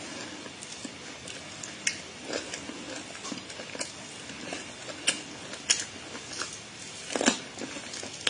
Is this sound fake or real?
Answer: real